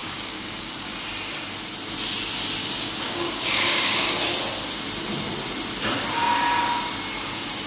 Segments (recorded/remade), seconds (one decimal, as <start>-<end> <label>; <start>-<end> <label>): 0.0-0.9 remade; 0.9-2.6 recorded; 2.6-4.1 remade; 4.1-7.7 recorded